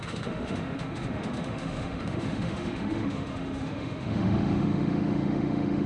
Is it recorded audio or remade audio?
remade